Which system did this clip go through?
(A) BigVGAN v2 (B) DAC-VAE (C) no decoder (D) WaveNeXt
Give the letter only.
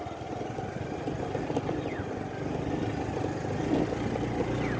C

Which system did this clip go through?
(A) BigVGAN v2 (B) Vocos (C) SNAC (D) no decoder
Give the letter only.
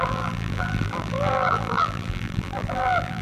A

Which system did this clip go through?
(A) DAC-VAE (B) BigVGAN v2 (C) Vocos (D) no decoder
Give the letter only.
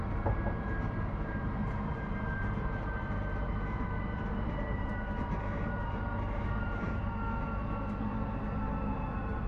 B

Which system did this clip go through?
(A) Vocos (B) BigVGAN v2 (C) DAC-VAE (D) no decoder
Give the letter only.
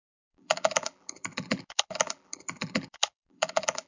B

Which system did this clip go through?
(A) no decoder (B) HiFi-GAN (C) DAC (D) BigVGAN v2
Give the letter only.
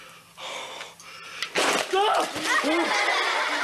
A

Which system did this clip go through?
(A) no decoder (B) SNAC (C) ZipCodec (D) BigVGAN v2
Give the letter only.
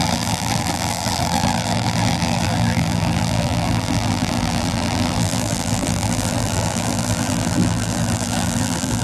D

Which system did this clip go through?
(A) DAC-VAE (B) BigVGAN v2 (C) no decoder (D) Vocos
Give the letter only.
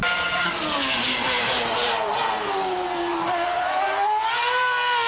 B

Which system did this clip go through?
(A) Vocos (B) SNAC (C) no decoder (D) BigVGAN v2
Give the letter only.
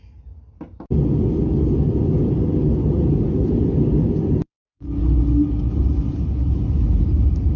C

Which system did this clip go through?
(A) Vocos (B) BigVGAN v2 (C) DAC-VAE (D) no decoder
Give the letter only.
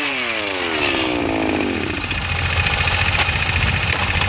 D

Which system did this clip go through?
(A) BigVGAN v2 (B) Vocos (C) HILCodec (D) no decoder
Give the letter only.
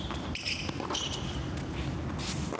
D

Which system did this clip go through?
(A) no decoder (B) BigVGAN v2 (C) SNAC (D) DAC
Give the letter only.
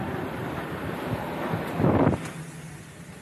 A